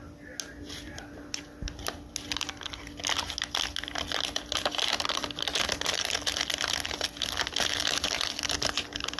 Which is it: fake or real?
real